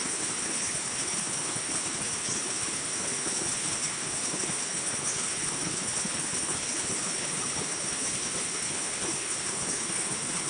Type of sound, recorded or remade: remade